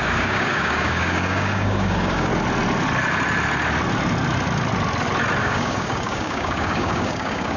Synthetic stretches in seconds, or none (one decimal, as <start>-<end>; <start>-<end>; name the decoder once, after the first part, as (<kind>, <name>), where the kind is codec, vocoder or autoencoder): 0.0-2.3 (codec, DAC); 5.4-7.6